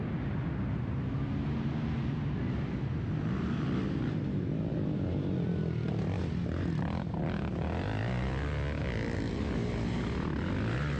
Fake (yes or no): no